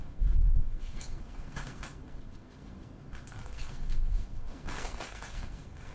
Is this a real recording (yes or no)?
no